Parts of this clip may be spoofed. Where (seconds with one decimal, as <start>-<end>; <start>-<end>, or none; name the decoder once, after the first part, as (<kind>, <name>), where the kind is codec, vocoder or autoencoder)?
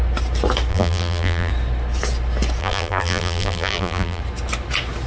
0.7-1.5 (vocoder, BigVGAN v2); 2.6-4.2